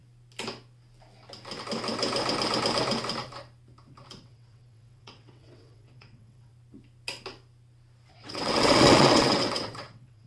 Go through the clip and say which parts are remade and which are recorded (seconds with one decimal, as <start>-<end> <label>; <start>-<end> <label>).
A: 0.0-4.2 recorded; 4.2-6.5 remade; 6.5-8.1 recorded; 8.1-10.3 remade